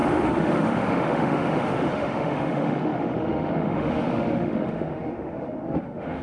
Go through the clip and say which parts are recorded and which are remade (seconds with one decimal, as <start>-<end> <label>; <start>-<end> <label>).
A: 0.0-6.2 remade